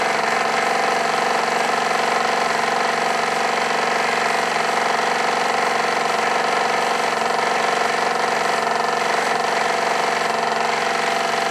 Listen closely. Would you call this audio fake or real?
real